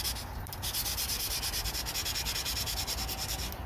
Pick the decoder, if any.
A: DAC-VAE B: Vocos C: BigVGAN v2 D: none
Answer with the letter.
D